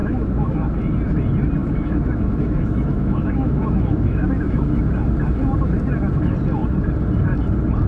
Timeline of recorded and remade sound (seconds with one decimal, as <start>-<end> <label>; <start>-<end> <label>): 0.0-0.5 remade; 0.5-1.6 recorded; 1.6-4.8 remade; 4.8-7.9 recorded